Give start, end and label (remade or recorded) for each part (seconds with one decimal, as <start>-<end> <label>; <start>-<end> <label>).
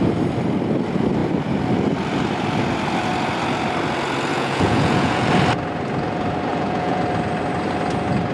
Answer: 0.0-4.3 recorded; 4.3-5.3 remade; 5.3-6.5 recorded; 6.5-7.0 remade; 7.0-8.3 recorded